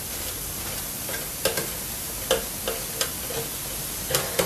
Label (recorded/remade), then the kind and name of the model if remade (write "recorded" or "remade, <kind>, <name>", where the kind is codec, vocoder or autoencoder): recorded